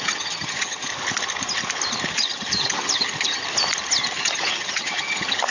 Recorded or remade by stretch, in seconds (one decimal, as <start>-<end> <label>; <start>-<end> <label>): 0.0-0.9 remade; 0.9-2.1 recorded; 2.1-3.4 remade; 3.4-4.1 recorded; 4.1-5.5 remade